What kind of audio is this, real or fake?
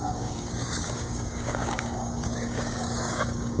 fake